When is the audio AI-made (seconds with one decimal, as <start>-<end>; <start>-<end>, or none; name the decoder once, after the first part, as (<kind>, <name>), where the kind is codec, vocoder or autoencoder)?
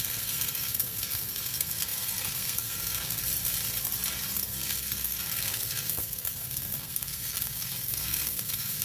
0.0-3.2 (codec, SNAC); 4.3-8.8